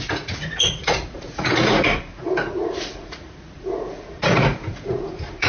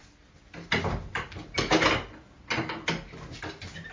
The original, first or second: second